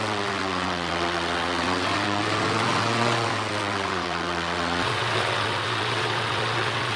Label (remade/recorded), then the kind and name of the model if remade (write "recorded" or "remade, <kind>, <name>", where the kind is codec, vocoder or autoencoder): remade, vocoder, WaveNeXt